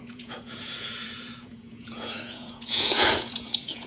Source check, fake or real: fake